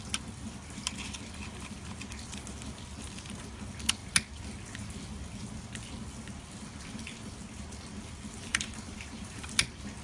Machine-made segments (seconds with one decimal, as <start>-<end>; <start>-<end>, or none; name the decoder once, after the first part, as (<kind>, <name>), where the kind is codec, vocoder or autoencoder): 8.5-9.5 (vocoder, BigVGAN v2)